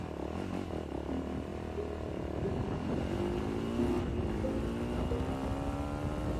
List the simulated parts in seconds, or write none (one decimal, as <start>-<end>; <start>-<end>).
none